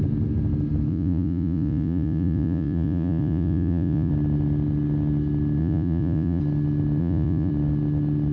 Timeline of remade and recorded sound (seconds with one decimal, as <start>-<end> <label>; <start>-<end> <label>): 0.0-0.9 recorded; 0.9-4.1 remade; 4.1-5.6 recorded; 5.6-6.4 remade; 6.4-7.0 recorded; 7.0-7.5 remade; 7.5-8.3 recorded